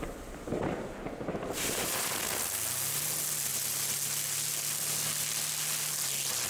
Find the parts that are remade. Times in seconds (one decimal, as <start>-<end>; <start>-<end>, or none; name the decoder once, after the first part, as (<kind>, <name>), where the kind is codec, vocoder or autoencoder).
none